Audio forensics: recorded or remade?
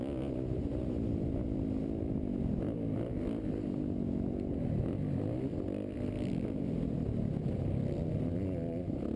recorded